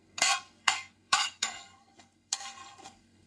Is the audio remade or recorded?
remade